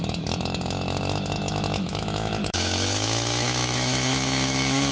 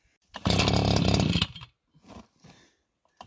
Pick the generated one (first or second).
first